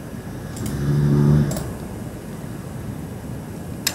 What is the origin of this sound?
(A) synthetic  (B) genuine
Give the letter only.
B